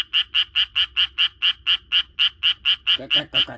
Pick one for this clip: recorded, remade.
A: recorded